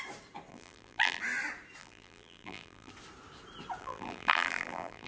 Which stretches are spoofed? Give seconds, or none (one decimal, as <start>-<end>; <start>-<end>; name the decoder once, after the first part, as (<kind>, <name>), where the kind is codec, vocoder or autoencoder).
0.5-1.2 (vocoder, BigVGAN v2); 1.8-2.9; 3.8-5.1